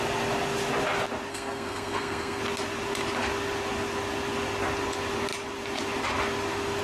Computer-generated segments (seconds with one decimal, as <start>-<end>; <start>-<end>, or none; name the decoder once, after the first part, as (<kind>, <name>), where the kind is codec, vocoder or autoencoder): 1.3-2.4 (codec, SNAC)